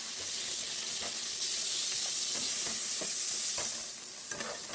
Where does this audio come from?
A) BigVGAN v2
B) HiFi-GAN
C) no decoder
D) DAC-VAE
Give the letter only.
C